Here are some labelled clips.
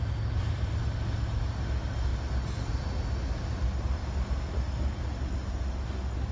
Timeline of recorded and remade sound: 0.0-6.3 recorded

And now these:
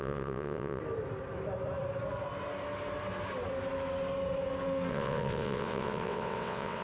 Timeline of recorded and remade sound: 0.0-0.8 remade; 0.8-4.9 recorded; 4.9-6.8 remade